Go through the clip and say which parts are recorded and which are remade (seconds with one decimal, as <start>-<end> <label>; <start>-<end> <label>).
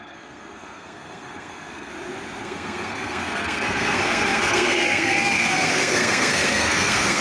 0.0-1.9 remade; 1.9-2.4 recorded; 2.4-7.2 remade